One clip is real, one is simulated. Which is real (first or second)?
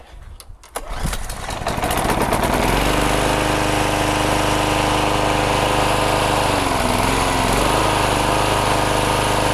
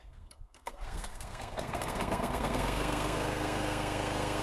first